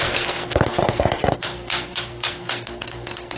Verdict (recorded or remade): remade